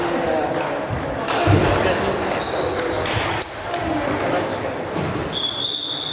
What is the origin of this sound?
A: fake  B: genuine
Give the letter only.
B